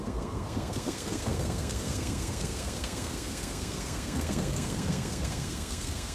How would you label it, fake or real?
fake